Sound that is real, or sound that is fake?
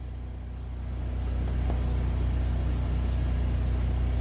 real